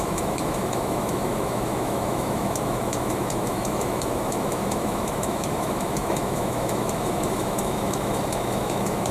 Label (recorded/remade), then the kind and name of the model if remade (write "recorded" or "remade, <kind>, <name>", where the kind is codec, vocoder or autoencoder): remade, autoencoder, DAC-VAE